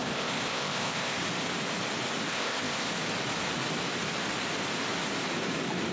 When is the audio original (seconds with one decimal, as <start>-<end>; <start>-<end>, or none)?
1.2-2.3; 2.9-5.9